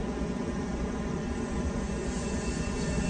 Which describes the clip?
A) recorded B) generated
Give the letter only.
B